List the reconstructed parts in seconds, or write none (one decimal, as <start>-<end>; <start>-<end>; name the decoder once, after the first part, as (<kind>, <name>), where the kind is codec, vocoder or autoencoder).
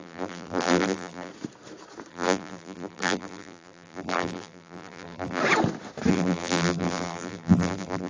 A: 0.0-1.3 (vocoder, BigVGAN v2); 2.1-5.4; 6.1-8.1